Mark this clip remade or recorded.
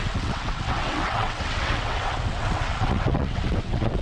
remade